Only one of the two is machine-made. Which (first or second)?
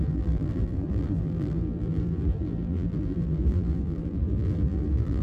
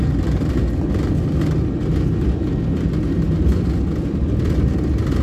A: first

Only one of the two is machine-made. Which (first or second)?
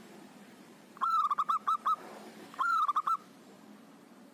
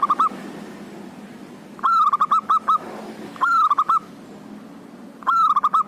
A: first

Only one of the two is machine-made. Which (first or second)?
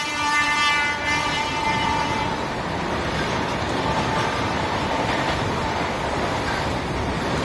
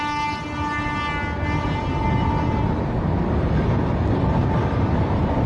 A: first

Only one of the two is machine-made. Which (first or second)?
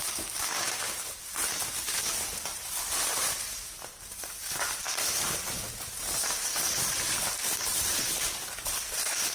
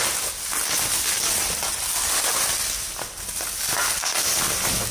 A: first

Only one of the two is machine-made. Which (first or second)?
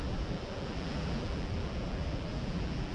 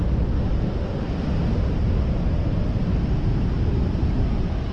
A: first